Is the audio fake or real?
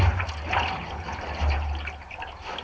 real